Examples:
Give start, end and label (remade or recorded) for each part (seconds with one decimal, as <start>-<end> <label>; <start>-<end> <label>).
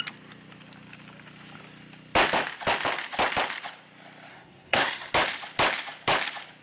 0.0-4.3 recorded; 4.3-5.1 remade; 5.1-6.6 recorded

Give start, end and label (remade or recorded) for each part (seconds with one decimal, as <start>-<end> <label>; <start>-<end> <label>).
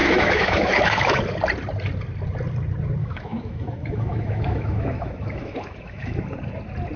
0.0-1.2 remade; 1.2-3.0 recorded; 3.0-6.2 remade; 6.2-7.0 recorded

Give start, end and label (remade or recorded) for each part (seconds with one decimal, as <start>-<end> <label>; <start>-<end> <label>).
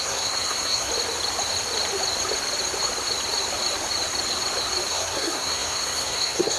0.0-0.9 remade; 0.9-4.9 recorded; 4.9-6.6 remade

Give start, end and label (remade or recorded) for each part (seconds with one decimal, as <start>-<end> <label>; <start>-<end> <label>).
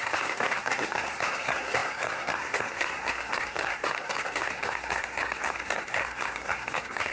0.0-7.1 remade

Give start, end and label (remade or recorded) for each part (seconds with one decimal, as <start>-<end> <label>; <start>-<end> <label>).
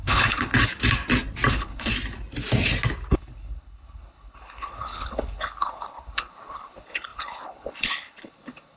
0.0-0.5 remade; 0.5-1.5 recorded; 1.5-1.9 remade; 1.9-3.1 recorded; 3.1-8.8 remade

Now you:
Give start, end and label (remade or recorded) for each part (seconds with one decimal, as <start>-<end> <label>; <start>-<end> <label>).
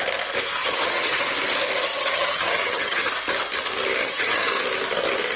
0.0-0.6 recorded; 0.6-1.3 remade; 1.3-1.9 recorded; 1.9-3.1 remade; 3.1-4.0 recorded; 4.0-4.6 remade; 4.6-5.4 recorded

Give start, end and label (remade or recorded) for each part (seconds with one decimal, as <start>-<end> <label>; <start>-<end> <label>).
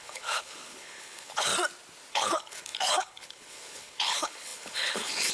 0.0-1.5 remade; 1.5-2.1 recorded; 2.1-5.3 remade